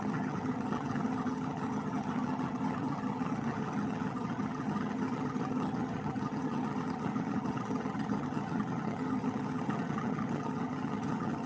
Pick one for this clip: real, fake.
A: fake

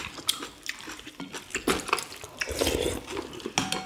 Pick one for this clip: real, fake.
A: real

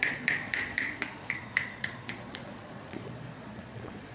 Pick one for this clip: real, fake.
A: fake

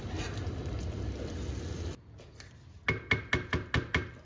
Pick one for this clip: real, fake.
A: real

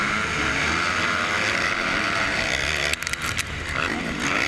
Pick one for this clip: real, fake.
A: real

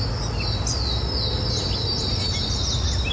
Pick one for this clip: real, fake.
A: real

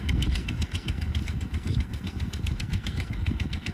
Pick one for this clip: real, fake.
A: fake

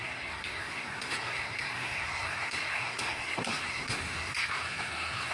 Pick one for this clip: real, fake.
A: fake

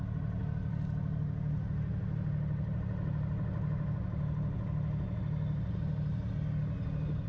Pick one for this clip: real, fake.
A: real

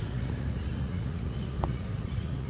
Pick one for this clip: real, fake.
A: fake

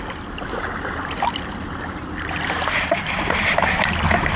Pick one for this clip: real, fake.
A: real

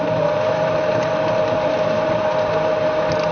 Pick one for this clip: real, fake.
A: fake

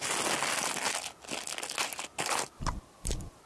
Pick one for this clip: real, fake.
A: real